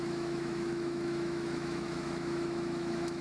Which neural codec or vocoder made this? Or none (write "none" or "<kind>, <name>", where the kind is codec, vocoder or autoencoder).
autoencoder, DAC-VAE